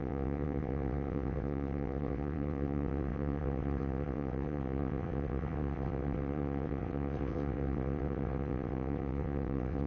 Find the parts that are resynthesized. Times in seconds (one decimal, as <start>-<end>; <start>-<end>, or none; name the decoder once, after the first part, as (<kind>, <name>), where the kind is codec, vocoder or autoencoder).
0.0-9.9 (vocoder, WaveNeXt)